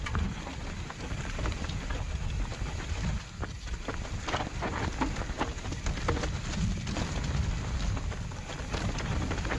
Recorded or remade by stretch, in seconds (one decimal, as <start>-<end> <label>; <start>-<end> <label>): 0.0-9.6 recorded